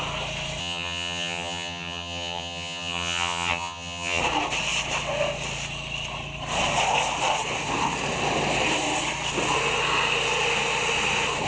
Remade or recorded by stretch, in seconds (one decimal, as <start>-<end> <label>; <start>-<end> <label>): 0.0-0.6 recorded; 0.6-4.2 remade; 4.2-11.5 recorded